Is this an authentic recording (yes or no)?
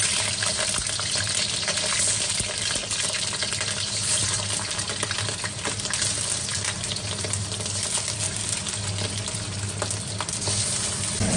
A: yes